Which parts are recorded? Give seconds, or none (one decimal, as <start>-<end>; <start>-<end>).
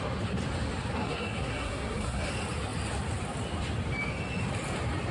0.0-1.0; 2.3-5.1